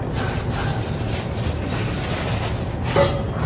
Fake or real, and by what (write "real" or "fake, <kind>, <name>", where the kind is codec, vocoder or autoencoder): real